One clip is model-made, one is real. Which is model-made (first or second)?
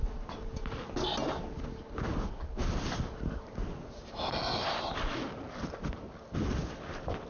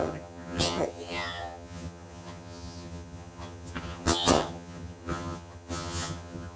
second